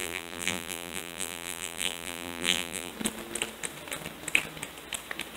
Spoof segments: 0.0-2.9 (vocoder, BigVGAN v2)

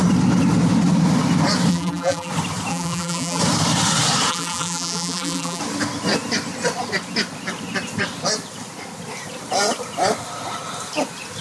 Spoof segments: 1.7-2.3 (vocoder, BigVGAN v2); 2.7-3.4; 4.3-5.6

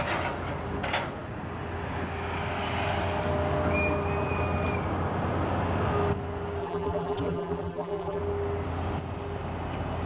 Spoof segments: 6.6-8.2 (vocoder, BigVGAN v2)